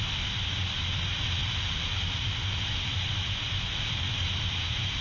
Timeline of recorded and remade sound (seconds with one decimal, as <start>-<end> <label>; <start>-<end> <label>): 0.0-5.0 recorded